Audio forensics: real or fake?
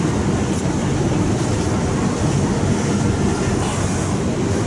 real